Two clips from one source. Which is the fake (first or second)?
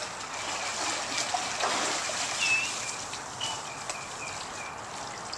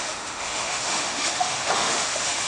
second